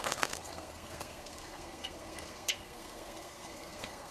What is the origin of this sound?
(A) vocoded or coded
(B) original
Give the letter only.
A